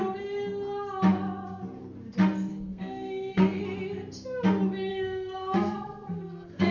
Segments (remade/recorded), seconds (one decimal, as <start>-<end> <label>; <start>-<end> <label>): 0.0-2.5 recorded; 2.5-3.6 remade; 3.6-4.9 recorded; 4.9-6.7 remade